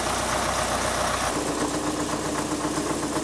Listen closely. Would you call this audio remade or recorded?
recorded